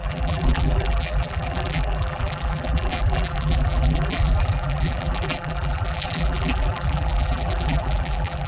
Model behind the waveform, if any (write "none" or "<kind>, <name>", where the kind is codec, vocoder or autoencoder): vocoder, BigVGAN v2